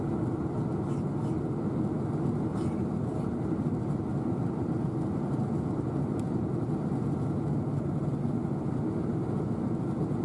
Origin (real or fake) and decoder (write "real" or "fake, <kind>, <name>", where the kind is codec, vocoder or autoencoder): real